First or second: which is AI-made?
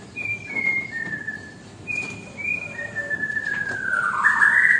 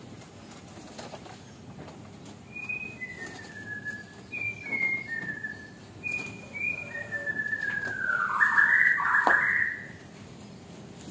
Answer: first